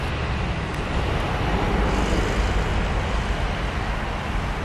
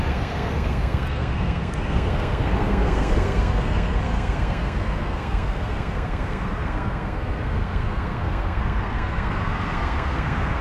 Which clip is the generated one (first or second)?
second